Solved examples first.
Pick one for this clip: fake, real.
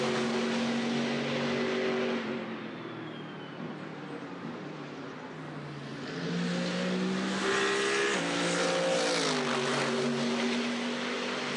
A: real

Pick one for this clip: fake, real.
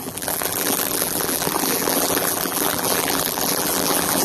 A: fake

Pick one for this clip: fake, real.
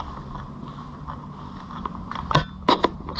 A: real